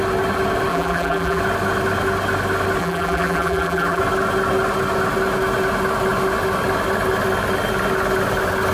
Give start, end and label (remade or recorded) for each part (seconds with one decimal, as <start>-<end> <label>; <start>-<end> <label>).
0.0-0.7 recorded; 0.7-1.4 remade; 1.4-2.8 recorded; 2.8-4.0 remade; 4.0-8.7 recorded